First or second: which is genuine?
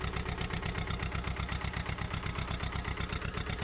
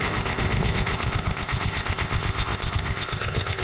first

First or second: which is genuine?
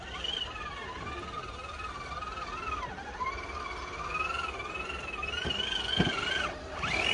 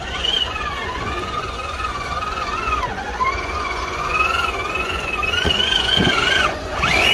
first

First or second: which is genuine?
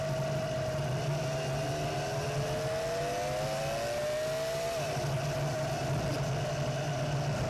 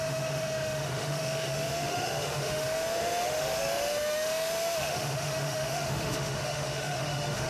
first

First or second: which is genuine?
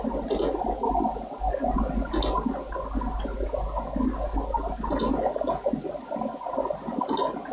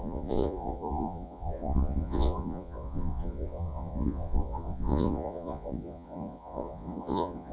first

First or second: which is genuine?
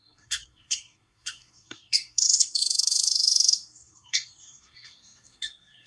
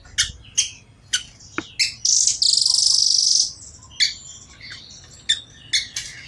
second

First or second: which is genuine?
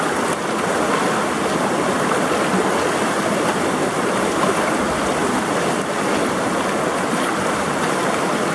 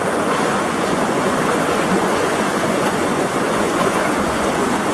first